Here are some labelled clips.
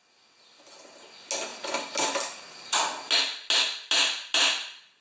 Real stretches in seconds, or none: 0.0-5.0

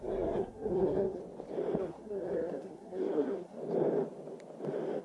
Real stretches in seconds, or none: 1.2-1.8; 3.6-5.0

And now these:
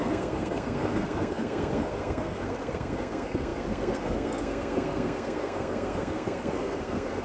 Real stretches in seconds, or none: none